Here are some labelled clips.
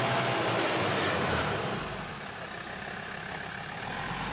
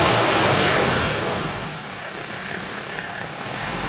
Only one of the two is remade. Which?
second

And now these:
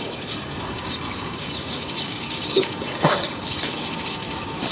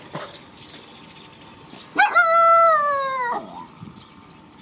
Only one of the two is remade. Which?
first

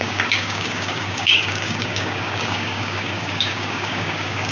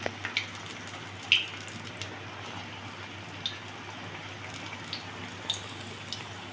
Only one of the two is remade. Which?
first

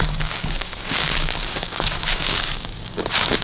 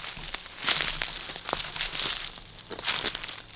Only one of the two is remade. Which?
first